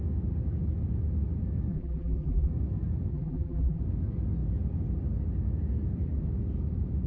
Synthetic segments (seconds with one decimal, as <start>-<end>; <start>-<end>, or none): 1.7-2.5; 3.1-3.8